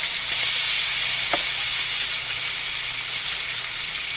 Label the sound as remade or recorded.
remade